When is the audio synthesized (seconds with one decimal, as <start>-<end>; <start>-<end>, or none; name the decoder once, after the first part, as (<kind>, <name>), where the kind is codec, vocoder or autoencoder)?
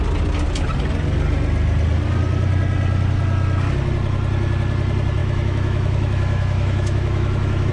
5.2-7.7 (autoencoder, DAC-VAE)